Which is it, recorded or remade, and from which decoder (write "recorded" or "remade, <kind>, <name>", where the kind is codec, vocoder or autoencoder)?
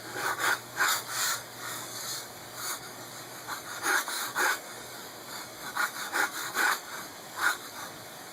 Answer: remade, codec, DAC